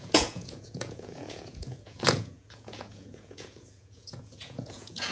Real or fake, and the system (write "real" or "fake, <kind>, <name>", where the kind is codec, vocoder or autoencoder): fake, vocoder, Vocos